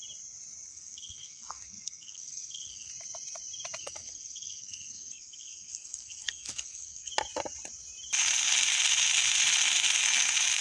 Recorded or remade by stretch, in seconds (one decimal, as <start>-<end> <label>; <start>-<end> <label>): 0.0-0.7 recorded; 0.7-2.9 remade; 2.9-3.8 recorded; 3.8-7.1 remade; 7.1-10.6 recorded